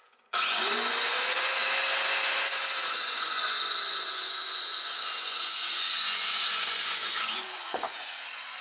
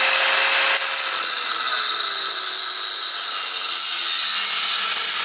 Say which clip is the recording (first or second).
second